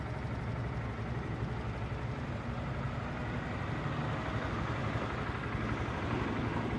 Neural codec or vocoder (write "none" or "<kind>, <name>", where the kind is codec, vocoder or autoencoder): none